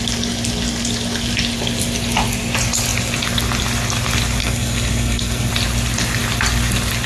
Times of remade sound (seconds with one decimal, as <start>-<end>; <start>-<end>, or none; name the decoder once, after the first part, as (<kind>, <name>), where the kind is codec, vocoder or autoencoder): 4.4-5.5 (codec, SNAC)